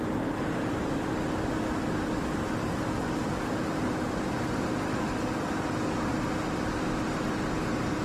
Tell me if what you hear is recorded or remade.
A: recorded